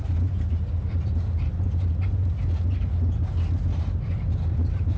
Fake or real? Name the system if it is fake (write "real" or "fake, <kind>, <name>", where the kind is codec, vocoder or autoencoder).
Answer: real